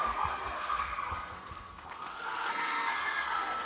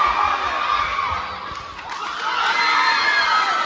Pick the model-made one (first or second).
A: first